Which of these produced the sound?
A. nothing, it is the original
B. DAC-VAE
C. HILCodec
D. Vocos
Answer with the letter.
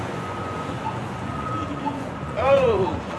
D